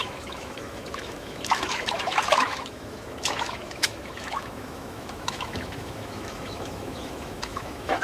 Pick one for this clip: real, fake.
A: fake